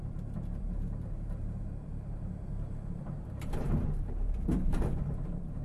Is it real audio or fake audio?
fake